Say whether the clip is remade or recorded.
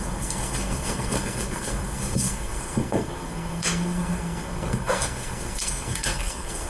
remade